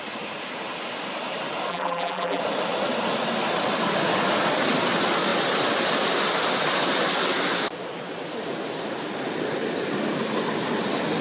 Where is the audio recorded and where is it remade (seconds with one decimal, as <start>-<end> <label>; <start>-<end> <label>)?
0.0-1.7 recorded; 1.7-2.4 remade; 2.4-11.2 recorded